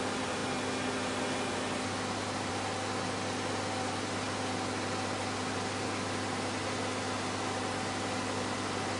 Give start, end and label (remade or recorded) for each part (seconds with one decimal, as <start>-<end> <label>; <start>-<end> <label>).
0.0-9.0 recorded